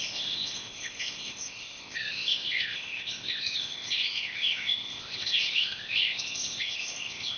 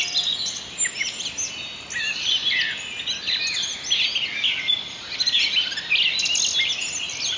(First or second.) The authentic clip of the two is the second